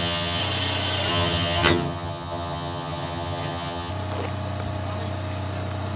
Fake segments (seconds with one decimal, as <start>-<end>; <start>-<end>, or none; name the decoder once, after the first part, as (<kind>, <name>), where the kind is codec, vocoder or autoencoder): 0.0-0.4 (vocoder, HiFi-GAN); 1.1-3.9